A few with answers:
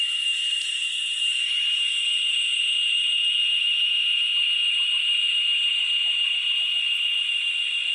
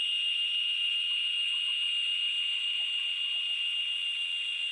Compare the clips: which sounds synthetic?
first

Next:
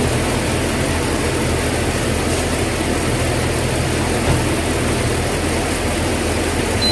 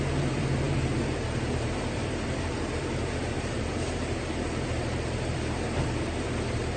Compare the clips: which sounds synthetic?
second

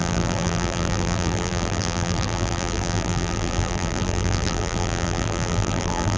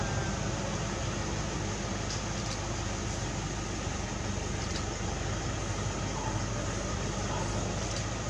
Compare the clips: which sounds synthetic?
first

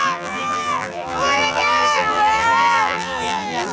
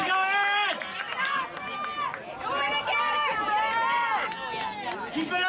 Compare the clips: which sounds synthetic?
first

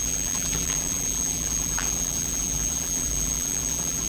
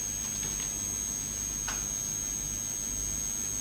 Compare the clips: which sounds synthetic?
first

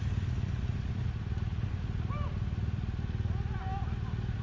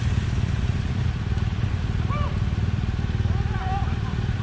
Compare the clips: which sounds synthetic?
second